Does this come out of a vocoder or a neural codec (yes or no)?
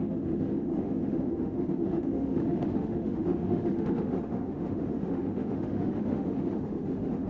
yes